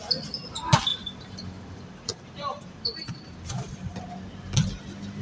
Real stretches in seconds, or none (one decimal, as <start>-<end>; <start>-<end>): 0.0-0.9; 4.0-5.2